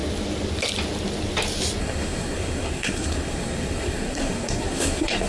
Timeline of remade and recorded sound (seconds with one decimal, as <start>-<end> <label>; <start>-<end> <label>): 0.0-1.8 recorded; 1.8-5.3 remade